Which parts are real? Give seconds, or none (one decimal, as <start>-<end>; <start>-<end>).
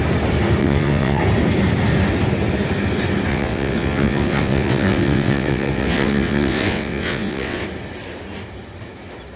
0.0-0.6; 1.2-3.3; 7.6-9.4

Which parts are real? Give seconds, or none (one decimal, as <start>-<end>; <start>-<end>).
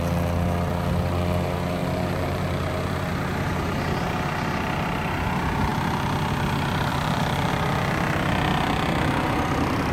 0.0-1.8; 2.7-6.9; 7.5-9.9